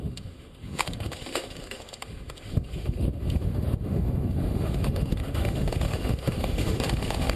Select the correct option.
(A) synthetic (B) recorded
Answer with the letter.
A